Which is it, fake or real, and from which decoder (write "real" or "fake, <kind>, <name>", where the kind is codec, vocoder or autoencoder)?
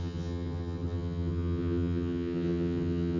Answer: fake, vocoder, HiFi-GAN